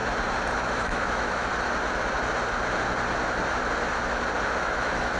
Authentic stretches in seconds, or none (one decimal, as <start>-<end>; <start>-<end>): 0.0-0.6; 1.5-4.6